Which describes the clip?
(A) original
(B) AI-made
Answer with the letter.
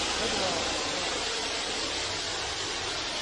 A